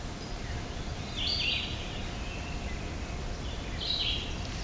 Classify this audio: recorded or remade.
recorded